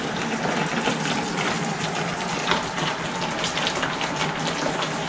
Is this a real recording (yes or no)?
yes